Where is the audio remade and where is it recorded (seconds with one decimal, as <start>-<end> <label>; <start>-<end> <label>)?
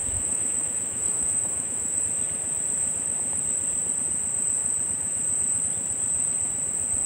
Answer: 0.0-2.0 remade; 2.0-7.1 recorded